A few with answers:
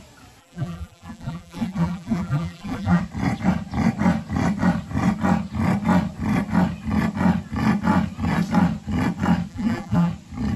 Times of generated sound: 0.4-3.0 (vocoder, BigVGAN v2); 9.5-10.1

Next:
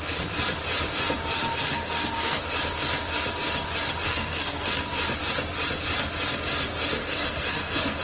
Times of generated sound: 1.7-2.4 (codec, SNAC); 4.1-4.7; 7.0-8.0